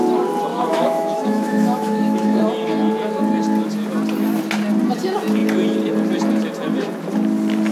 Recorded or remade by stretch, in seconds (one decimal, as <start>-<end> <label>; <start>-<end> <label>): 0.0-0.5 recorded; 0.5-2.4 remade; 2.4-7.7 recorded